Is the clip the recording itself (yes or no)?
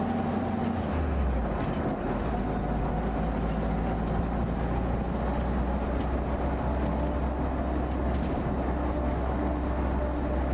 yes